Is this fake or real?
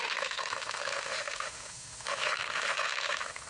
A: fake